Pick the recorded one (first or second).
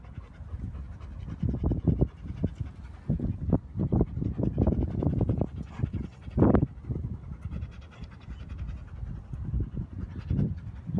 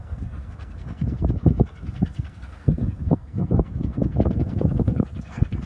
first